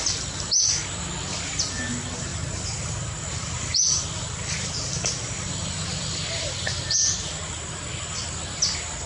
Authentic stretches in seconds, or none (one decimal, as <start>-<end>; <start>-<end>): 0.0-9.1